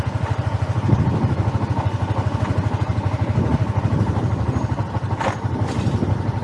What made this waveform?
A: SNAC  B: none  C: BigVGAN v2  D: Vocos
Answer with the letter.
B